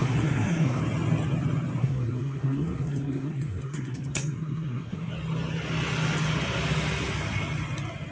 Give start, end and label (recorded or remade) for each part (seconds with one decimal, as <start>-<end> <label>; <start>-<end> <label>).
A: 0.0-0.8 remade; 0.8-1.8 recorded; 1.8-5.1 remade; 5.1-8.1 recorded